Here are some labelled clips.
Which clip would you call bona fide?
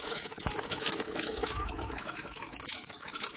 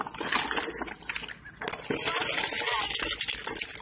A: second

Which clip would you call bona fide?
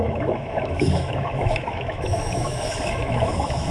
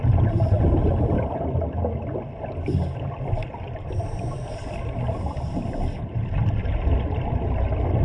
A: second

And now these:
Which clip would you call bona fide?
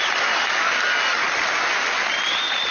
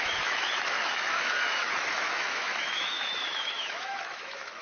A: first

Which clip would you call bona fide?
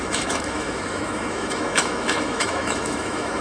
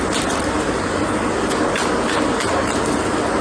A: second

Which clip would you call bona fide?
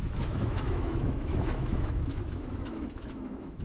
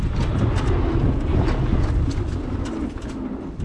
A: second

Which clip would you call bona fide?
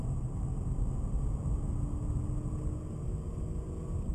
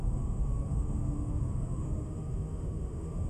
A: first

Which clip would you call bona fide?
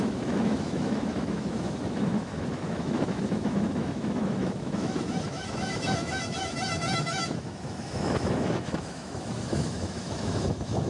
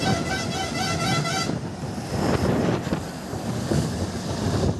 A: second